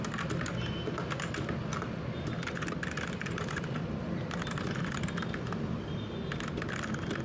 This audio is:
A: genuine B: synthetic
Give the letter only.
A